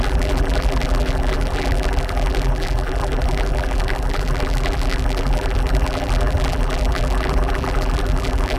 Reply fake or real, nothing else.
fake